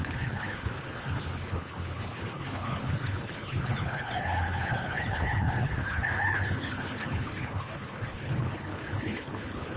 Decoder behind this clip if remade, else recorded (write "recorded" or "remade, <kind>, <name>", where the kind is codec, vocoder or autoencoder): remade, codec, HILCodec